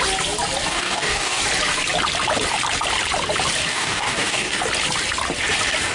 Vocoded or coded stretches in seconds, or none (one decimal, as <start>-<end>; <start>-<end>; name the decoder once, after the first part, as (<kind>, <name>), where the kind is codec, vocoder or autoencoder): 0.7-1.4 (codec, DAC); 3.7-4.6